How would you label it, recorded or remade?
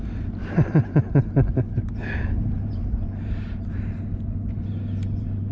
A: remade